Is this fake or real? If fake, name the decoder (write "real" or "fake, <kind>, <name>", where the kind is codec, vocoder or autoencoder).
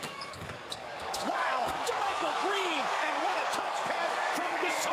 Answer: fake, codec, DAC